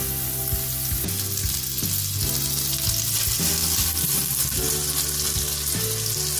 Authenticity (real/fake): real